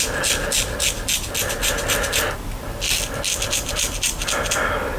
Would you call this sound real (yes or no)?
yes